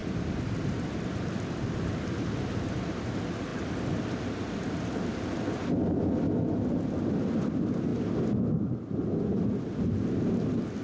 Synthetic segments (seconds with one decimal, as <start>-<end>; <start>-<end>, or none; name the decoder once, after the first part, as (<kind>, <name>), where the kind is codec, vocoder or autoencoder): 0.0-2.0 (vocoder, BigVGAN v2); 3.5-5.2; 7.9-9.6